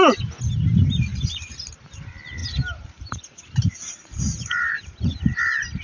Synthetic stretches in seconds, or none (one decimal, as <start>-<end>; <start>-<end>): 1.1-1.7; 2.4-5.2

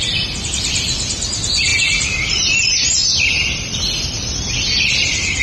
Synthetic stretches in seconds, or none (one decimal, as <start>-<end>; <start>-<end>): none

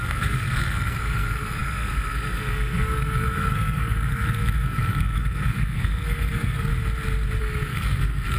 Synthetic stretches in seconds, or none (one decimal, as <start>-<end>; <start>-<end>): 0.0-6.7; 7.4-8.4